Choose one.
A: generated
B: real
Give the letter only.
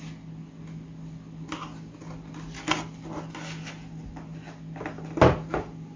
B